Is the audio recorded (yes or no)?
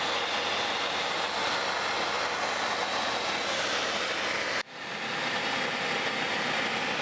yes